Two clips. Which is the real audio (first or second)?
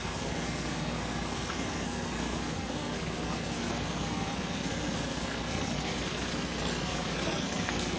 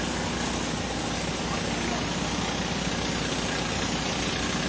second